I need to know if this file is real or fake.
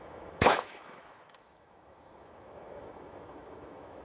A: fake